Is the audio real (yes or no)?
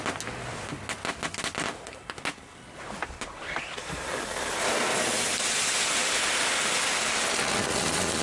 yes